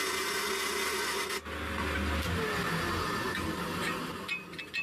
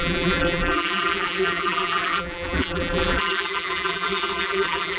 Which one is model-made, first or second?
second